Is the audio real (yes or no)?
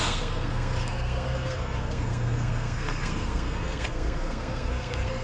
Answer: no